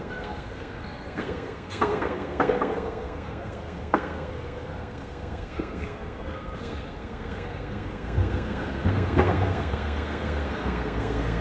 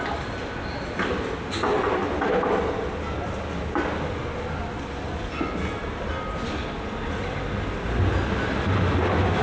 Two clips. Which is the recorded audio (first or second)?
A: second